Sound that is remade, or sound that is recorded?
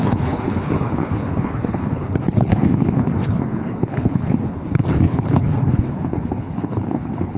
remade